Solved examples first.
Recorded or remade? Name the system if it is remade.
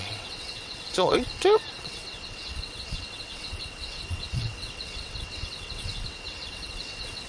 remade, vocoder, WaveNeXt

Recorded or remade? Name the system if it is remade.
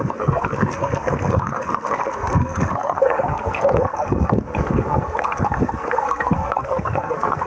remade, codec, SNAC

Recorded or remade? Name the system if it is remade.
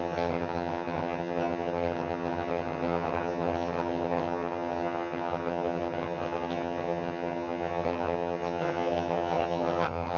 remade, vocoder, HiFi-GAN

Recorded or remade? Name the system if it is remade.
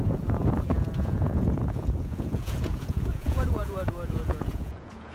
remade, vocoder, Vocos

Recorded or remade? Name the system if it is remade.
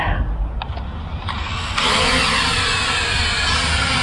recorded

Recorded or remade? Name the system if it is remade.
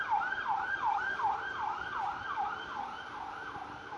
remade, vocoder, BigVGAN v2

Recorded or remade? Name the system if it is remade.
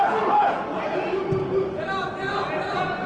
recorded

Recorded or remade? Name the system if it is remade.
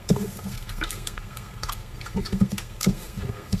remade, codec, SNAC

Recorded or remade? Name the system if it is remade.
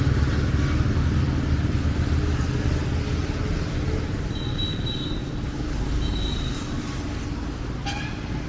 recorded